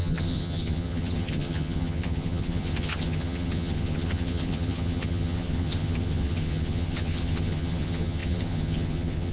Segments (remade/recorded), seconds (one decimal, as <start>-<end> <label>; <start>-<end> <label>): 0.0-9.3 remade